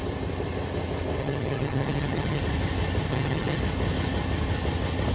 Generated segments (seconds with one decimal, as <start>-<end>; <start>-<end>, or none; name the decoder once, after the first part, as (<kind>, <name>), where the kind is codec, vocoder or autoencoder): 1.2-2.4 (vocoder, HiFi-GAN); 3.1-3.6